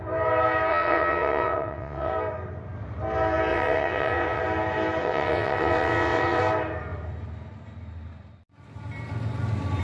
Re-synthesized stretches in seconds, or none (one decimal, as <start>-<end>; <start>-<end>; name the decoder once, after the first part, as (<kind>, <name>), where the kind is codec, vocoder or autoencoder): 0.7-2.1 (vocoder, WaveNeXt); 3.5-4.4; 5.0-6.4